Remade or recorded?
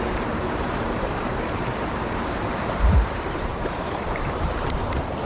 remade